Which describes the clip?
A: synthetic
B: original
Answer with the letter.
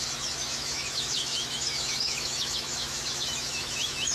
A